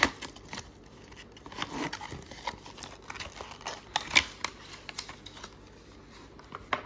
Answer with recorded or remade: recorded